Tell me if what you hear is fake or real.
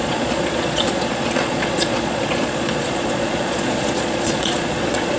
fake